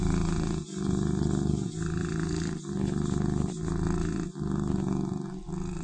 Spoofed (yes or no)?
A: no